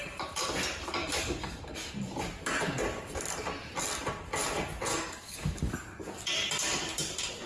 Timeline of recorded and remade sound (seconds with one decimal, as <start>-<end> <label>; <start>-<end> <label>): 0.0-1.0 recorded; 1.0-1.9 remade; 1.9-4.9 recorded; 4.9-5.7 remade; 5.7-7.5 recorded